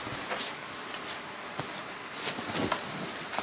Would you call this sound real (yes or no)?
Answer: yes